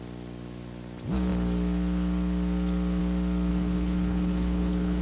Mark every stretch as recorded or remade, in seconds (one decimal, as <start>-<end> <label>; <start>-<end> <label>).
0.0-3.5 recorded; 3.5-5.0 remade